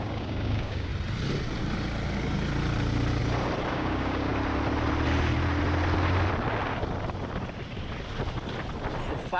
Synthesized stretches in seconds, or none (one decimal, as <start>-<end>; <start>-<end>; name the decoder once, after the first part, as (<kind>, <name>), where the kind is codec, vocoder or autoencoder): 0.0-0.9 (codec, DAC); 3.7-4.3